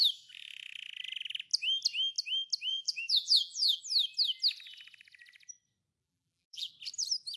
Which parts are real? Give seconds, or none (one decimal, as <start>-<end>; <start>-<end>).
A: 0.0-2.7; 3.8-6.0; 6.7-7.4